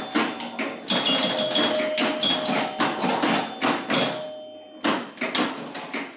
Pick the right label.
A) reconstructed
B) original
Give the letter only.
B